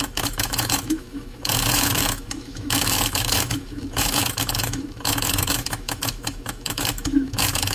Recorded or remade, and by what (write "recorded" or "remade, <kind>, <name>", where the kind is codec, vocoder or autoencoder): remade, autoencoder, DAC-VAE